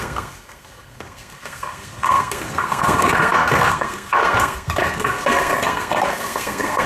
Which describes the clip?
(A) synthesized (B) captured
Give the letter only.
A